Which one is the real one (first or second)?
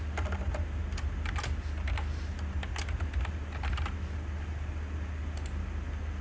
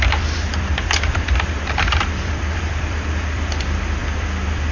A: first